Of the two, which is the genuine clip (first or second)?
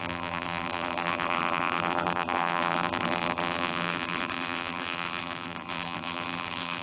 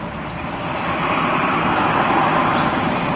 second